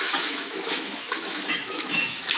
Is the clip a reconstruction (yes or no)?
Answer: yes